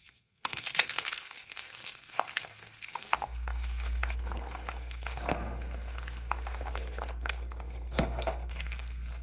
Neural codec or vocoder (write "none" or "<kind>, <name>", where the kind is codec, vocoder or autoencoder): codec, SNAC